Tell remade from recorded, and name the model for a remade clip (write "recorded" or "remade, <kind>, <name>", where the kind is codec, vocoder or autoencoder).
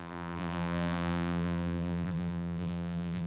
remade, vocoder, BigVGAN v2